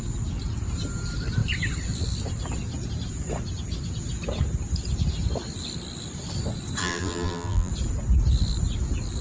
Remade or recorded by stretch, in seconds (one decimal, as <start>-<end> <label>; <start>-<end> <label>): 0.0-6.8 recorded; 6.8-7.7 remade; 7.7-9.2 recorded